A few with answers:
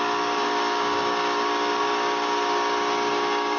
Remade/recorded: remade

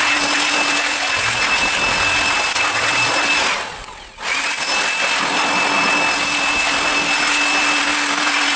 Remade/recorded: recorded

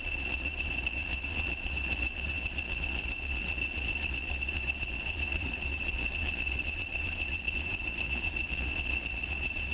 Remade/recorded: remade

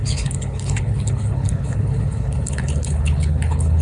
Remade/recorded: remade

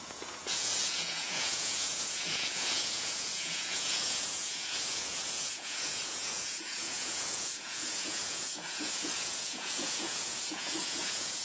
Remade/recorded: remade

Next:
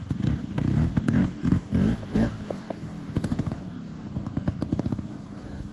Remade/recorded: remade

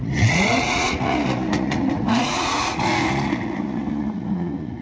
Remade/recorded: remade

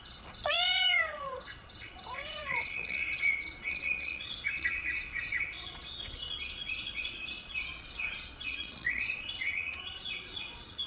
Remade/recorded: remade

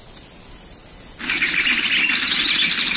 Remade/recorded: recorded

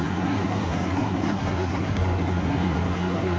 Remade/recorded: remade